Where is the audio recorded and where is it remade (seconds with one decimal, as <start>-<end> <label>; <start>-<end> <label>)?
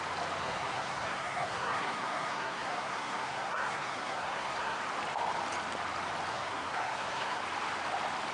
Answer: 0.0-0.4 recorded; 0.4-4.8 remade; 4.8-6.3 recorded; 6.3-7.4 remade; 7.4-8.3 recorded